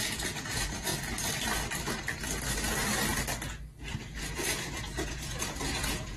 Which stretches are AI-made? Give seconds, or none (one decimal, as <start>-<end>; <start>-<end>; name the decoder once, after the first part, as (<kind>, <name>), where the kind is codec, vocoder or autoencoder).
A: 0.0-0.9 (vocoder, Vocos); 4.3-6.2

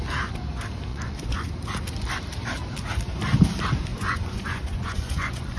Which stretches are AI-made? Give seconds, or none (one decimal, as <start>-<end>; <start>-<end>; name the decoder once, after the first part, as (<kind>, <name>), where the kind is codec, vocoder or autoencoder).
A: 0.9-1.5 (vocoder, Vocos); 3.9-5.6

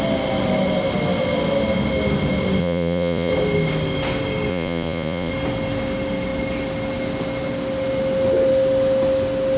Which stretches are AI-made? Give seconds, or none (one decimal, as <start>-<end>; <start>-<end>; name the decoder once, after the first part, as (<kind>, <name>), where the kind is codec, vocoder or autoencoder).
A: 2.6-3.3 (vocoder, Vocos); 4.5-5.3

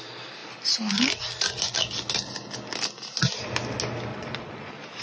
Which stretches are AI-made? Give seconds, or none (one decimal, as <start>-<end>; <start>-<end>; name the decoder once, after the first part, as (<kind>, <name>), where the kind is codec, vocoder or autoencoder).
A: 4.1-5.0 (vocoder, Vocos)

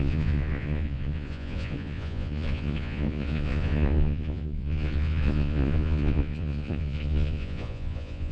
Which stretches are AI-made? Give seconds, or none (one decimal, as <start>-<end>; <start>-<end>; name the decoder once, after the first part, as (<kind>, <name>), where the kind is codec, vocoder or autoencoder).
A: 0.0-8.3 (vocoder, Vocos)

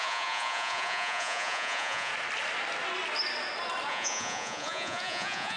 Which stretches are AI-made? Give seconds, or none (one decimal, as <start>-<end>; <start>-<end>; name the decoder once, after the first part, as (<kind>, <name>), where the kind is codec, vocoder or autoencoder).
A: 0.0-2.1 (vocoder, Vocos); 3.9-5.6